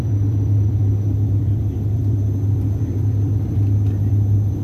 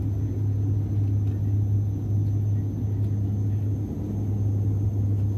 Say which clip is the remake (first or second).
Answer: first